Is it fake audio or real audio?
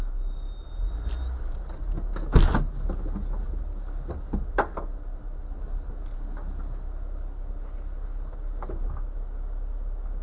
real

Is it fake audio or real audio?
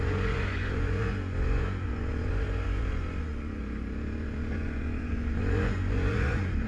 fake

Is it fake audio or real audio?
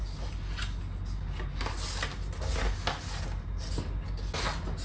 real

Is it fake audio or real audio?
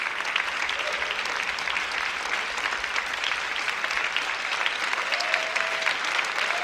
real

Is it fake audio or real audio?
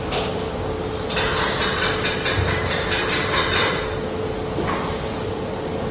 real